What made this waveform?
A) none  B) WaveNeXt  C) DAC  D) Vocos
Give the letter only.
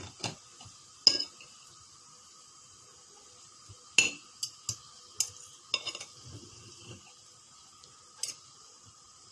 A